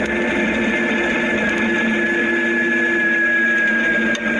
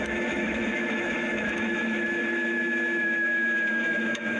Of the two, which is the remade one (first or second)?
second